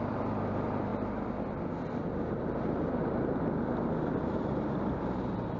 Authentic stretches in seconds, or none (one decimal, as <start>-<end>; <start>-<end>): 0.0-5.6